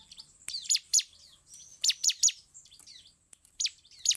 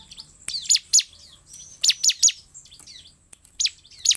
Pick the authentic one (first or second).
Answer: second